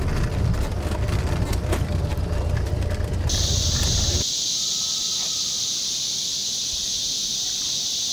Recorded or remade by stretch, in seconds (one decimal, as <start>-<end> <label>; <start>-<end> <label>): 0.0-8.1 recorded